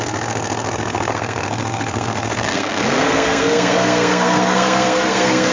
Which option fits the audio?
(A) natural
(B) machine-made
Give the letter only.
B